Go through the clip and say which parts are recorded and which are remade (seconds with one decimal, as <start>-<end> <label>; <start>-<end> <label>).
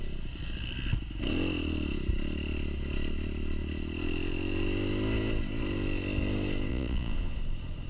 0.0-6.7 recorded; 6.7-7.4 remade; 7.4-7.9 recorded